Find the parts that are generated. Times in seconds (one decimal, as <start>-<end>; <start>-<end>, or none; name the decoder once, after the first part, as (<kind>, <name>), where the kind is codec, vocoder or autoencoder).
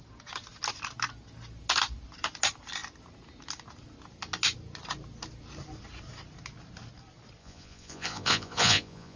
7.4-9.2 (vocoder, Vocos)